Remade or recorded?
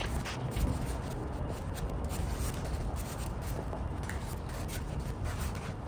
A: recorded